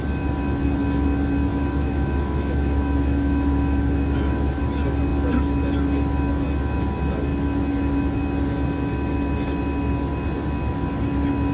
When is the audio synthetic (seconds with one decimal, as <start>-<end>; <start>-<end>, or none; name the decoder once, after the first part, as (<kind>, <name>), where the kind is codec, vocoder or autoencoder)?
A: 1.5-4.6 (autoencoder, DAC-VAE)